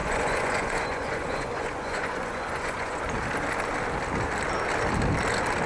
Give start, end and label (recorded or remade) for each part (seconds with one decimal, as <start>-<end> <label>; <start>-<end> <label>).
0.0-3.0 remade; 3.0-5.7 recorded